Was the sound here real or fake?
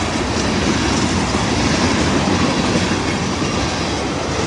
real